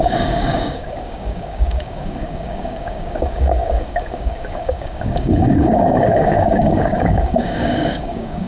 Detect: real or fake fake